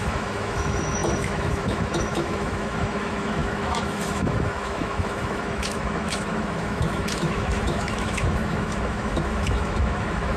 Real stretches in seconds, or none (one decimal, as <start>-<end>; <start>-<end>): none